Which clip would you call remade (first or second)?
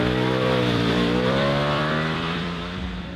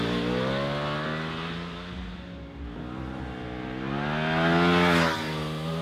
first